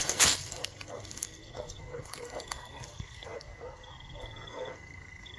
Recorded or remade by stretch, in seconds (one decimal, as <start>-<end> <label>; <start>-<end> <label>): 0.0-5.4 remade